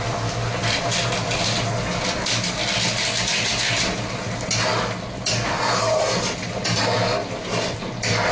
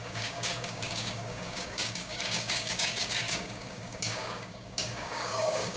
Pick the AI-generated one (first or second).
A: second